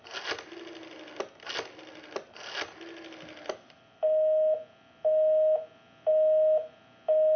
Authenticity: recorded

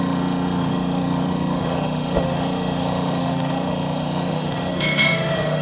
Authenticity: remade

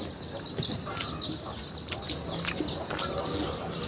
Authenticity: recorded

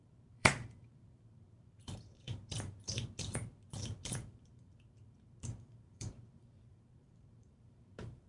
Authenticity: remade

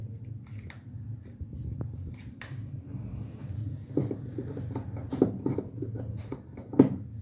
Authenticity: remade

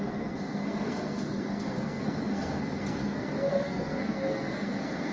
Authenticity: remade